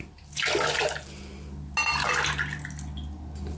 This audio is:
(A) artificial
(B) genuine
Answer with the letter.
B